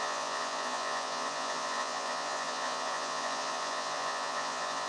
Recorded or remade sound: remade